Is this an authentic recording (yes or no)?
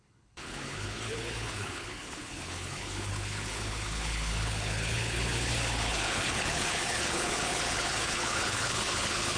no